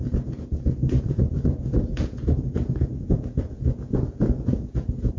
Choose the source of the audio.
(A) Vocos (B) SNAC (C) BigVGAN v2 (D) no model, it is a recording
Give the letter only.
A